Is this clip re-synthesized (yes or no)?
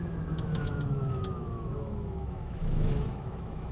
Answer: yes